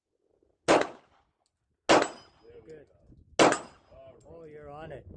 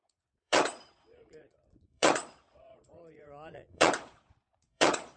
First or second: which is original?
first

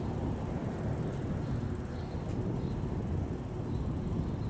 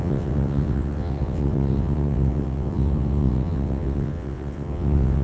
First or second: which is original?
first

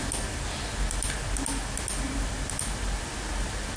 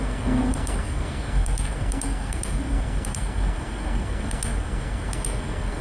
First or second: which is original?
first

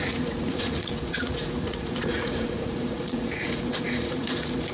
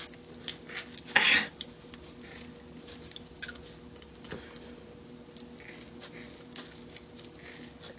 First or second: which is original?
second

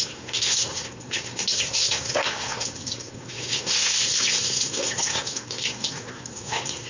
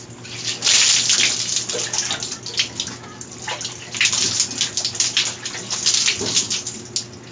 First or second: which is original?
second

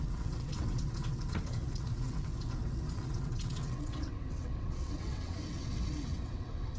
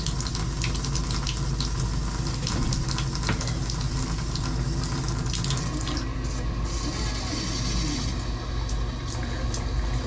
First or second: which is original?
second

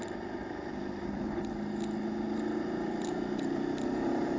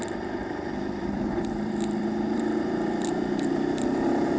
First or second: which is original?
first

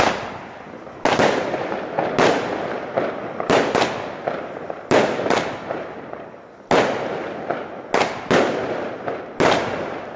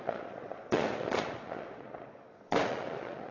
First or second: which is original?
first